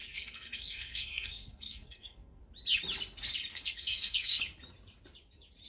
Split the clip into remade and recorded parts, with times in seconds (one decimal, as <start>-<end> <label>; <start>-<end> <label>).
0.0-2.4 remade; 2.4-3.5 recorded; 3.5-4.4 remade; 4.4-5.7 recorded